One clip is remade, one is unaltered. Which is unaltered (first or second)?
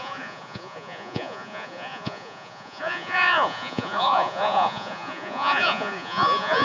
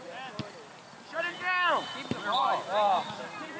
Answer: second